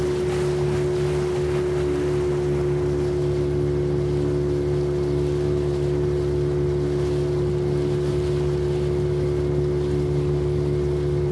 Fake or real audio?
real